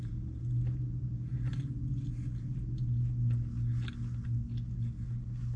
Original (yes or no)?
yes